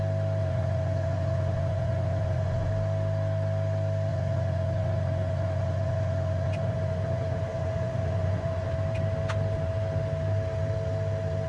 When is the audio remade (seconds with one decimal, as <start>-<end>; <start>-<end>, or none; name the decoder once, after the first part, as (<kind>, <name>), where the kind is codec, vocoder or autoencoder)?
0.4-2.7 (vocoder, Vocos); 4.1-8.7